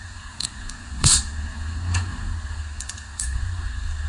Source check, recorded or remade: remade